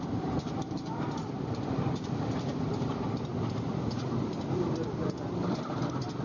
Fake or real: fake